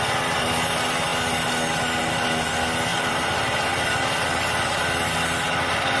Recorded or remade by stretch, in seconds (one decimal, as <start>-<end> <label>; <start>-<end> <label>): 0.0-2.9 recorded; 2.9-4.0 remade; 4.0-6.0 recorded